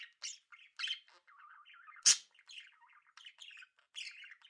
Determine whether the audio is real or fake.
real